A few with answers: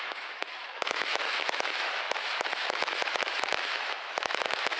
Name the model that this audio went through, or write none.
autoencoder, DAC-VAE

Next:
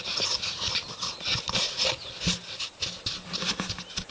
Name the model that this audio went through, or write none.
none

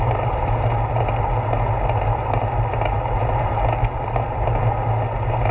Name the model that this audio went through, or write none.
none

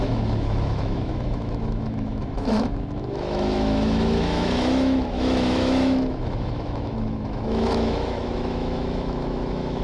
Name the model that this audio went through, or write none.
autoencoder, DAC-VAE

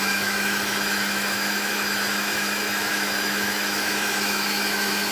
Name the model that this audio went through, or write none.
autoencoder, DAC-VAE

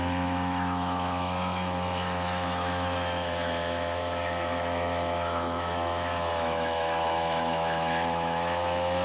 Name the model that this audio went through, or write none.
autoencoder, DAC-VAE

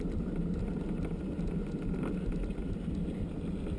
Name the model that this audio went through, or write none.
none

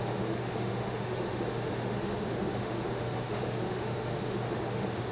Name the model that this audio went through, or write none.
autoencoder, DAC-VAE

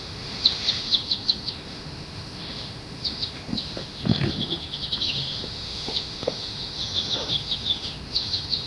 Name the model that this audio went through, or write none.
autoencoder, DAC-VAE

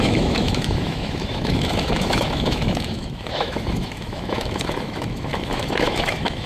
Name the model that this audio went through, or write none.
autoencoder, DAC-VAE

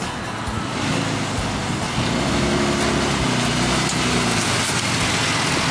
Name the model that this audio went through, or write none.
none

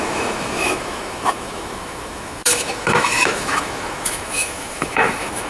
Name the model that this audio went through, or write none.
autoencoder, DAC-VAE